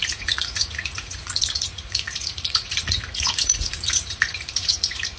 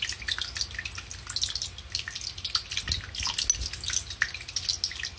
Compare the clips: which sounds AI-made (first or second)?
first